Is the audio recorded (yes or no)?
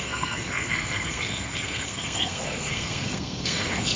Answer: no